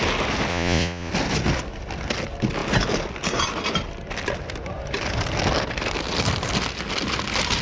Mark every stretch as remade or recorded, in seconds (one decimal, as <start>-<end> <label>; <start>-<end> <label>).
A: 0.0-0.5 recorded; 0.5-1.1 remade; 1.1-7.6 recorded